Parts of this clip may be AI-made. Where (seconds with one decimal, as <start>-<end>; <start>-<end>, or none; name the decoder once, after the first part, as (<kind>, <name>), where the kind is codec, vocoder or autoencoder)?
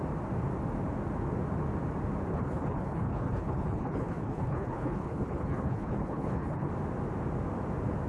2.3-6.7 (codec, HILCodec)